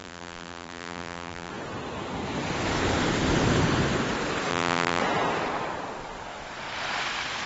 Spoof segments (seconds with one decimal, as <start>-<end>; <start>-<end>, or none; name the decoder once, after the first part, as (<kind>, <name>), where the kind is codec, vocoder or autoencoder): 0.0-1.5 (vocoder, BigVGAN v2); 4.5-5.0